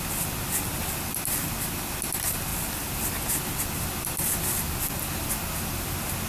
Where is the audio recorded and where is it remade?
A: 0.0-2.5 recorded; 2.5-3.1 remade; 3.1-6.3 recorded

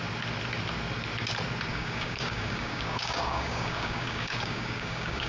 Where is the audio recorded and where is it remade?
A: 0.0-1.7 recorded; 1.7-5.3 remade

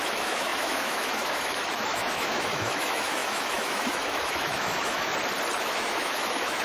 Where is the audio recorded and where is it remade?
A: 0.0-5.1 remade; 5.1-5.6 recorded; 5.6-6.6 remade

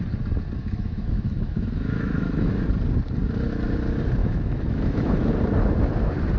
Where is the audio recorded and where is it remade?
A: 0.0-0.6 recorded; 0.6-2.5 remade; 2.5-4.2 recorded; 4.2-5.3 remade; 5.3-6.4 recorded

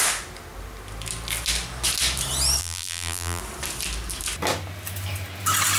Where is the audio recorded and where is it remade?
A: 0.0-2.6 recorded; 2.6-3.4 remade; 3.4-5.8 recorded